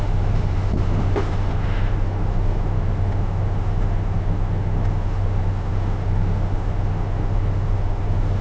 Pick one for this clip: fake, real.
fake